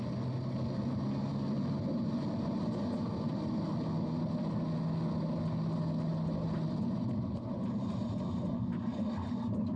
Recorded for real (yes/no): yes